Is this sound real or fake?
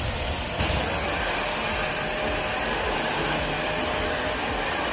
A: real